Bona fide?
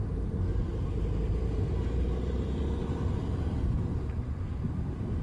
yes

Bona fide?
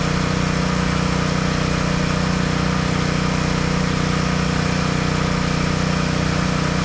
yes